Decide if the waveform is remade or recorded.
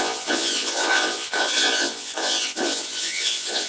remade